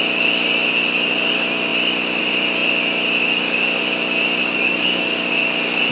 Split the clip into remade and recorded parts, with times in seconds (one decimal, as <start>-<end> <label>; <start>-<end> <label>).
0.0-4.4 recorded; 4.4-5.3 remade; 5.3-5.9 recorded

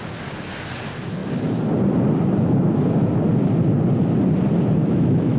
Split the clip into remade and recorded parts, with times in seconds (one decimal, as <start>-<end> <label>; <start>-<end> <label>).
0.0-4.8 recorded; 4.8-5.4 remade

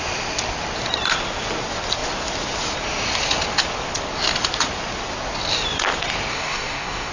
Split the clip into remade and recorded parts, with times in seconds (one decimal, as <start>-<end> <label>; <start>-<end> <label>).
0.0-6.3 recorded; 6.3-7.1 remade

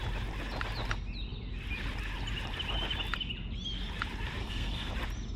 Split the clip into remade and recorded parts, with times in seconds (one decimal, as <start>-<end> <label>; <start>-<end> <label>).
0.0-4.4 recorded; 4.4-4.9 remade; 4.9-5.4 recorded

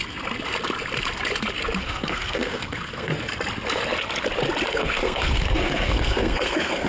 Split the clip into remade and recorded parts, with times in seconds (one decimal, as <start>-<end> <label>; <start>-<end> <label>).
0.0-1.8 recorded; 1.8-3.1 remade; 3.1-4.7 recorded; 4.7-6.9 remade

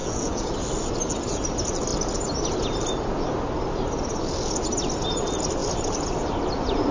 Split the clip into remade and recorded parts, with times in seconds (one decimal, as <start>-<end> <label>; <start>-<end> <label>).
0.0-0.5 remade; 0.5-6.9 recorded

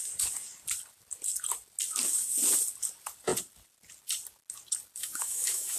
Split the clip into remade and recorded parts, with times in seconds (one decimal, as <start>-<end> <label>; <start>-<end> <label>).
0.0-5.0 recorded; 5.0-5.8 remade

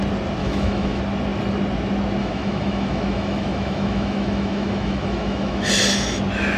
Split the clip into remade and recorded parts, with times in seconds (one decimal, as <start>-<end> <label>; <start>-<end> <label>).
0.0-0.4 recorded; 0.4-1.0 remade; 1.0-2.2 recorded; 2.2-5.7 remade; 5.7-6.6 recorded